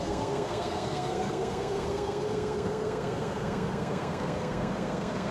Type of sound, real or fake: fake